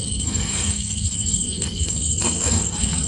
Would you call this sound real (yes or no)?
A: no